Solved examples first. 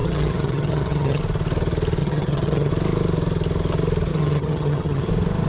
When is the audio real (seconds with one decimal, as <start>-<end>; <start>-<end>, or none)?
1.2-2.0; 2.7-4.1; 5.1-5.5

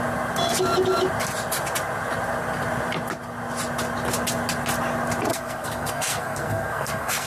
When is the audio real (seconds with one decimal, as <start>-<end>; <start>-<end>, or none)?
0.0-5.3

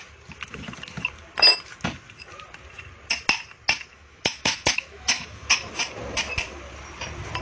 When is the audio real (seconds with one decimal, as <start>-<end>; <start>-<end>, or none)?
0.0-3.9; 5.7-7.4

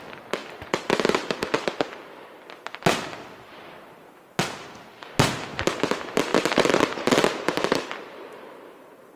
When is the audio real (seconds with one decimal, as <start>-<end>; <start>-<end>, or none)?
0.0-0.4; 2.4-6.3

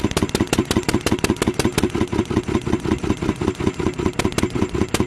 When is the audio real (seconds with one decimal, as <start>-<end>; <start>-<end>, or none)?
0.0-5.1